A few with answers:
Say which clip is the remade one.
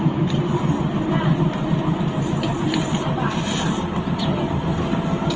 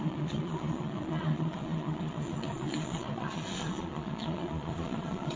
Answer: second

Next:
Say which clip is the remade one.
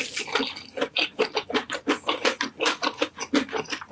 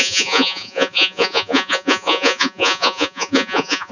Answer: second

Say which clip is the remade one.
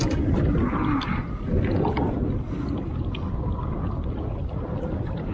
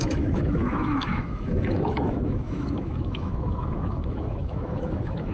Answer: second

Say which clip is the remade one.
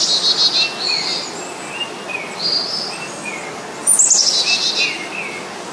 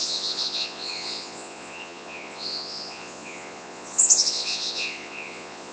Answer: second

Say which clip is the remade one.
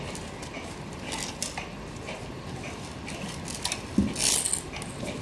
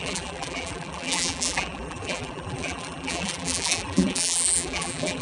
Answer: second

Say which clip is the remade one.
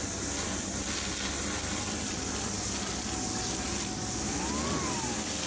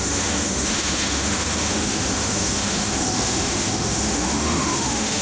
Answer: second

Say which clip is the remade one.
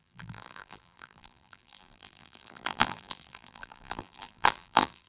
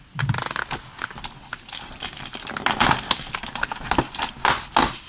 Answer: first